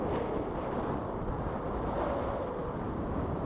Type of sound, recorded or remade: recorded